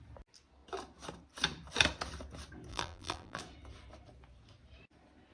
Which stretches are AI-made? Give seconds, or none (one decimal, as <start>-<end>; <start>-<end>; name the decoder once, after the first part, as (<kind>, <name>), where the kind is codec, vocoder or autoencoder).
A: 2.7-3.4 (vocoder, BigVGAN v2)